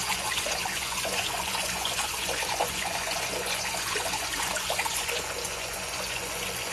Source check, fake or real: fake